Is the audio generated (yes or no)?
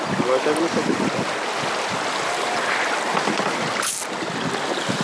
no